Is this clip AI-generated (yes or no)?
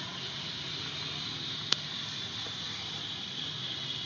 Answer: no